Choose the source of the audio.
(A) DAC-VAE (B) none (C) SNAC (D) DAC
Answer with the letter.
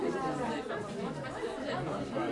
B